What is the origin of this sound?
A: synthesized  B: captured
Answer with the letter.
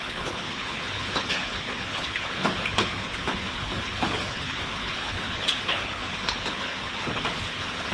A